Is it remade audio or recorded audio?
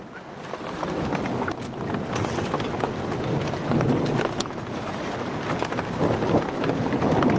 recorded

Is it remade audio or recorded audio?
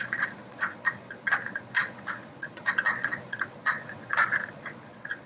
remade